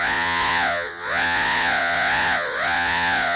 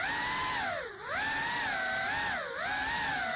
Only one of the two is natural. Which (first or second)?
second